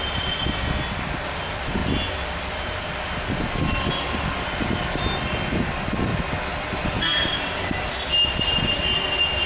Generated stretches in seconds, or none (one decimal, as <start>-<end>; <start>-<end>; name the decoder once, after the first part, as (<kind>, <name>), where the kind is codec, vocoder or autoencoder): none